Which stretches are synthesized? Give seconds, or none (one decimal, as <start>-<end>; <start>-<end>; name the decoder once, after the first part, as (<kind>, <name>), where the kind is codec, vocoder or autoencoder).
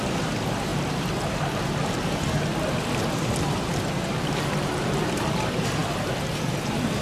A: none